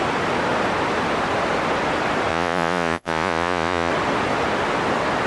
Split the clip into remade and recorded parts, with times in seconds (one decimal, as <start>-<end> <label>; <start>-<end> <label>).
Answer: 0.0-2.3 recorded; 2.3-3.9 remade; 3.9-5.3 recorded